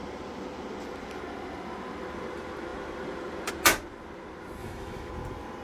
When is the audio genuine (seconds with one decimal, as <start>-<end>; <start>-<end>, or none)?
0.0-4.6; 5.1-5.6